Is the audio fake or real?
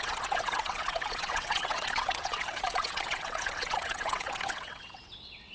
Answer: fake